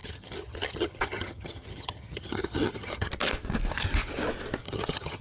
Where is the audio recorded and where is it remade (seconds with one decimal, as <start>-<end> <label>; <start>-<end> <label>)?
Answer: 0.0-3.1 remade; 3.1-4.6 recorded; 4.6-5.2 remade